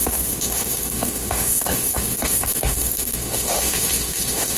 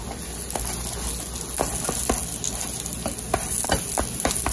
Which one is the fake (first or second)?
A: first